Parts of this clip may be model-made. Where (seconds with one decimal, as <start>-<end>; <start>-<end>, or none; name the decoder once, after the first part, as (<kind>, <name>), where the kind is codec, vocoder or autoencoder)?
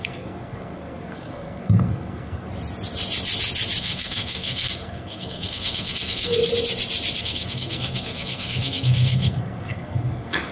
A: 0.0-2.5 (codec, SNAC); 3.8-6.4; 7.2-10.5